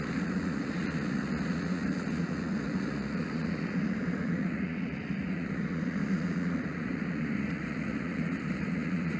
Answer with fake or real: fake